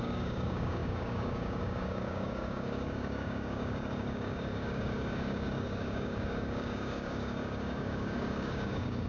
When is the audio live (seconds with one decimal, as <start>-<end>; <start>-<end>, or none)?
none